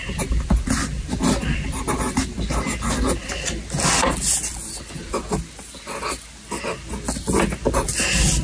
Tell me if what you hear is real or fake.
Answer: real